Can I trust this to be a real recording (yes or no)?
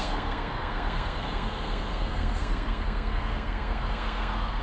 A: no